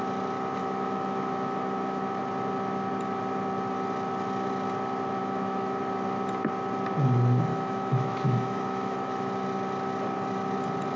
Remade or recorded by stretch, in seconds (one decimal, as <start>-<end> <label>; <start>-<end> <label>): 0.0-0.6 recorded; 0.6-2.2 remade; 2.2-5.2 recorded; 5.2-5.8 remade; 5.8-7.5 recorded; 7.5-9.3 remade; 9.3-11.0 recorded